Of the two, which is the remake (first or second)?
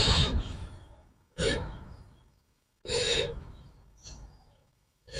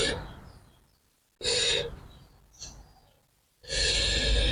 first